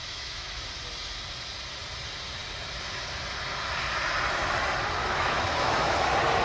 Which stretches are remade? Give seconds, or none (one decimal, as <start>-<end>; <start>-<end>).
0.0-0.6; 5.0-6.0